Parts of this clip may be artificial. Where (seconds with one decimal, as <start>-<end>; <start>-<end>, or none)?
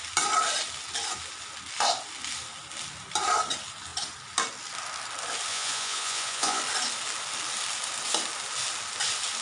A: 5.5-6.6